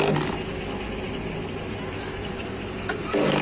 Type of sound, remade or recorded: recorded